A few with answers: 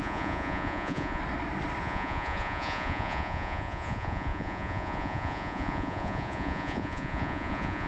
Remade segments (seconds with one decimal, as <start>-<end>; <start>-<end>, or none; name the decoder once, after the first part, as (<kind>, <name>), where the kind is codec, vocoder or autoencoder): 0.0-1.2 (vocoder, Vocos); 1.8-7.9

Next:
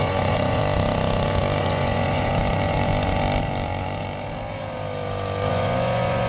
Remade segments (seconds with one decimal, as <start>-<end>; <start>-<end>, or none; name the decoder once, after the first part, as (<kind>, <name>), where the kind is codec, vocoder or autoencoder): 0.0-0.6 (vocoder, Vocos); 1.6-2.3; 5.5-6.3

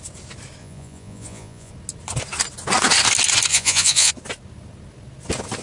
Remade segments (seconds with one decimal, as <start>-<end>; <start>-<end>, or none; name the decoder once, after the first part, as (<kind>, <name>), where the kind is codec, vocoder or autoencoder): 0.6-1.7 (vocoder, Vocos); 3.5-4.1

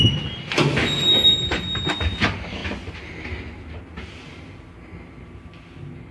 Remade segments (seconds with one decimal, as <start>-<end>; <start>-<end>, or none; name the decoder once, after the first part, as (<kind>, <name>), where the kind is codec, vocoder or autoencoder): none

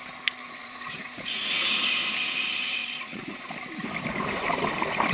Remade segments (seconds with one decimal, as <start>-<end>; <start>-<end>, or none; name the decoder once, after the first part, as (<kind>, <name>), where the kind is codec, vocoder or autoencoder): 0.4-1.4 (vocoder, Vocos); 2.8-3.5

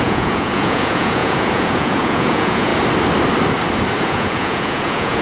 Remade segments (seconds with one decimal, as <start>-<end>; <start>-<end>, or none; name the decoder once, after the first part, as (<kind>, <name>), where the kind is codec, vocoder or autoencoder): 0.0-2.7 (vocoder, Vocos); 4.0-5.2

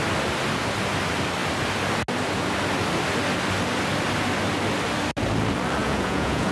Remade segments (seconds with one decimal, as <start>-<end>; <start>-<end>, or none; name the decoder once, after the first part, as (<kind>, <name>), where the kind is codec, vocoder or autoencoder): 5.8-6.5 (vocoder, Vocos)